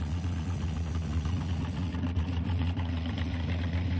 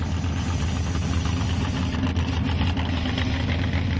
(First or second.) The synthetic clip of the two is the first